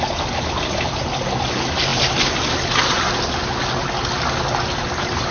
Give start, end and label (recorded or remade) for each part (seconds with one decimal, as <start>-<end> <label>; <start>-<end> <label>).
0.0-5.3 recorded